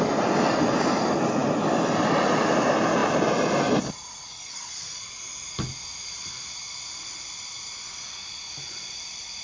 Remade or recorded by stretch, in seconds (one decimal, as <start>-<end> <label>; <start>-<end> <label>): 0.0-9.4 recorded